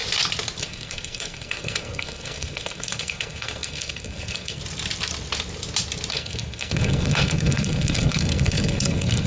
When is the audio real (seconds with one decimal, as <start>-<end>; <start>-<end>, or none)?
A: 0.0-0.6; 4.6-6.1